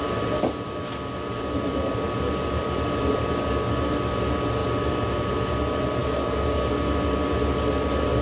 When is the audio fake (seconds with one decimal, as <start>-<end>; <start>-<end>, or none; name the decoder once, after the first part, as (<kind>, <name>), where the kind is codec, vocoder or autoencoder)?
6.0-6.7 (codec, DAC)